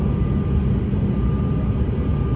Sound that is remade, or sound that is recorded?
recorded